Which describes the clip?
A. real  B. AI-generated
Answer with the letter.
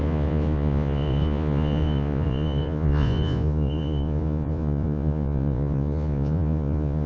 B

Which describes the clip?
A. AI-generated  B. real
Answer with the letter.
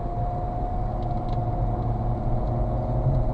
B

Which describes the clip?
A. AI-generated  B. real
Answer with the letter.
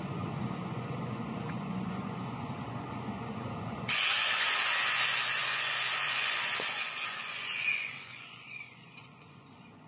A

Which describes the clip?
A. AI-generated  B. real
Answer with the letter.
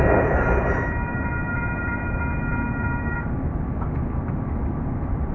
B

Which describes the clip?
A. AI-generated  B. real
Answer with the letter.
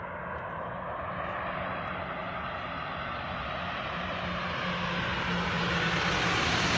B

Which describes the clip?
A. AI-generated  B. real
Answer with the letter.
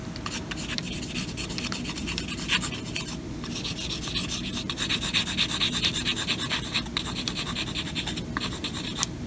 B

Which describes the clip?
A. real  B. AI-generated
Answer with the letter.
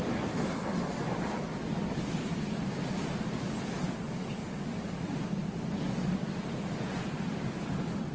A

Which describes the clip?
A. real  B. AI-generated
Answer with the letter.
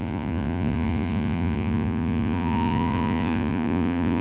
B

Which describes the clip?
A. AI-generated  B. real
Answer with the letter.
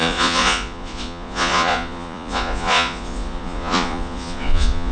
A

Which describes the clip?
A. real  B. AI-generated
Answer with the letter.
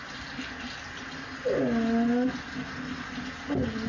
A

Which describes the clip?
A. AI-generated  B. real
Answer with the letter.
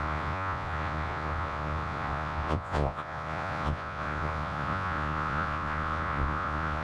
A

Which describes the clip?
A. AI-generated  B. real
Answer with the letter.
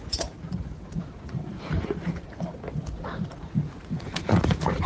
A